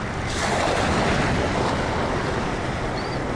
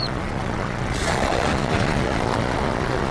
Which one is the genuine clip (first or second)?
first